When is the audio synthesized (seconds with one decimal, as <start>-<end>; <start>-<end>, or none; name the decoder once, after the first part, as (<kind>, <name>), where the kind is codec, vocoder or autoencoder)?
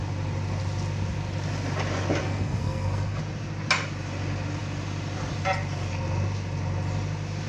2.2-3.2 (codec, SNAC)